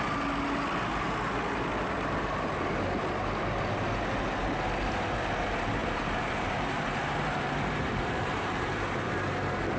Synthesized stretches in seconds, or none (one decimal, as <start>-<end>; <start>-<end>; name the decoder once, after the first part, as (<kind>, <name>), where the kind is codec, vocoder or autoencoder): 5.8-9.0 (vocoder, BigVGAN v2)